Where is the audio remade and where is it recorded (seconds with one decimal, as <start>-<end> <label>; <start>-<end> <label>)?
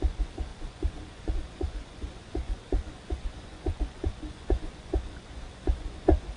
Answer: 0.0-6.4 remade